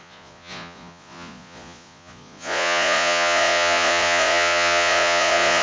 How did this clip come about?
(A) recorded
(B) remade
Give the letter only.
B